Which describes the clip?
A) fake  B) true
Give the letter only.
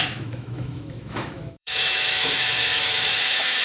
A